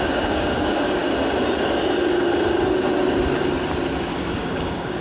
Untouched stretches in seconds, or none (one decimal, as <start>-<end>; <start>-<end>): 1.0-4.0